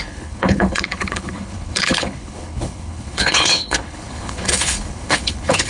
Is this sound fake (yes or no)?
yes